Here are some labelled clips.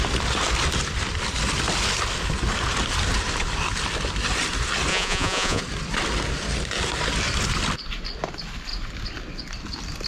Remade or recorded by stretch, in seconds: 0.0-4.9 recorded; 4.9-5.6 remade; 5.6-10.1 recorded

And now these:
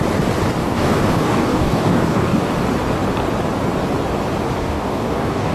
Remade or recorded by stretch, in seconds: 0.0-0.6 recorded; 0.6-2.5 remade; 2.5-4.6 recorded; 4.6-5.5 remade